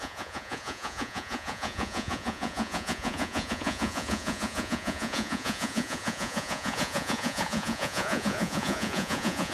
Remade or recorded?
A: remade